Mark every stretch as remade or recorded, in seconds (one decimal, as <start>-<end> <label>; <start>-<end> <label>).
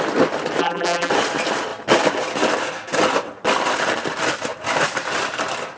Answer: 0.0-0.6 recorded; 0.6-1.1 remade; 1.1-5.8 recorded